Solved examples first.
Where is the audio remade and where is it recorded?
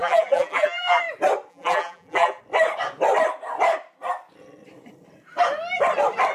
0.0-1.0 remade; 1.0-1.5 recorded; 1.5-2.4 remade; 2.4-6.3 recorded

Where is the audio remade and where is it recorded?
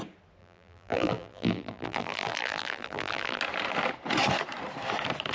0.0-0.4 recorded; 0.4-3.4 remade; 3.4-5.3 recorded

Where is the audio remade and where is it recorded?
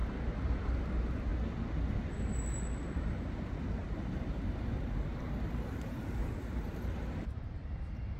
0.0-1.3 remade; 1.3-3.0 recorded; 3.0-8.2 remade